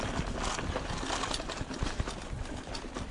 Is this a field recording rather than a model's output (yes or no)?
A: yes